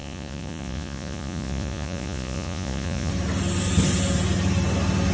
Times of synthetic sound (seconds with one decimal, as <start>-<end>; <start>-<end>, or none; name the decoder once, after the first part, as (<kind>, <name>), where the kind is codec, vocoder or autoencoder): 0.0-3.1 (vocoder, Vocos)